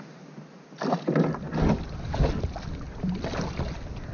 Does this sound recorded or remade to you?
recorded